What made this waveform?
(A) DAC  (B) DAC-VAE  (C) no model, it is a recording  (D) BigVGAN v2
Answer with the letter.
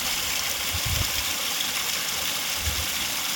C